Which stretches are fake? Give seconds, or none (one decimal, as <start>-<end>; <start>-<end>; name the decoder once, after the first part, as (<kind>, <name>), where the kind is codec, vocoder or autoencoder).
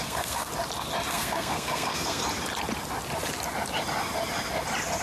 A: 0.0-0.5 (codec, SNAC); 1.1-2.2